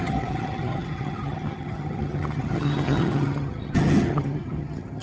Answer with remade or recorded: remade